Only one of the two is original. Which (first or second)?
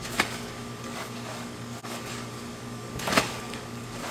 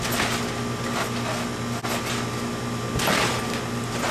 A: second